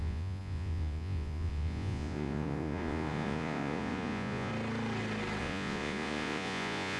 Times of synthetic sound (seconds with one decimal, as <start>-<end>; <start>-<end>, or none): 0.0-4.5; 5.4-7.0